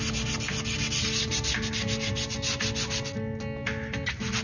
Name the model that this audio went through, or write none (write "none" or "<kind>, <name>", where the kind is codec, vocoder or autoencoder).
none